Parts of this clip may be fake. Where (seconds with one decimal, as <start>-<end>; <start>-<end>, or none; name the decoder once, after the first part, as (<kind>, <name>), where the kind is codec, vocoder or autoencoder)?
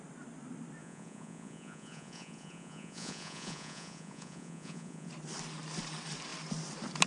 0.8-5.1 (vocoder, Vocos)